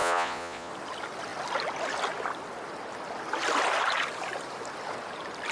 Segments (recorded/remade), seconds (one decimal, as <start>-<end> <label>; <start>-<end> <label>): 0.0-0.7 remade; 0.7-5.5 recorded